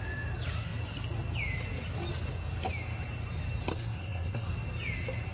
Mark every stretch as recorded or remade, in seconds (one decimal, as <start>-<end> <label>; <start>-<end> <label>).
0.0-3.7 recorded; 3.7-4.5 remade; 4.5-5.3 recorded